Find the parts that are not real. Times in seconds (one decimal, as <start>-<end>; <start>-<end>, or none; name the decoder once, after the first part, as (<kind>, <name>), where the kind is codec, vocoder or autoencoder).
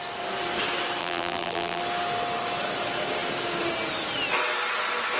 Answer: 1.0-1.8 (vocoder, BigVGAN v2)